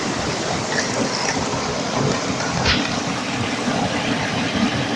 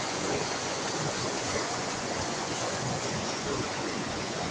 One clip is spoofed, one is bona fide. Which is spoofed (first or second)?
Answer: second